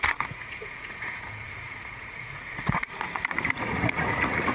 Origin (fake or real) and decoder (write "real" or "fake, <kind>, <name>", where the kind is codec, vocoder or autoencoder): fake, vocoder, Vocos